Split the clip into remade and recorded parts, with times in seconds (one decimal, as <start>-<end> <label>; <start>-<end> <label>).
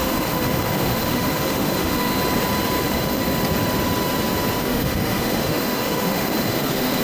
0.0-2.1 remade; 2.1-2.8 recorded; 2.8-3.2 remade; 3.2-4.6 recorded; 4.6-7.0 remade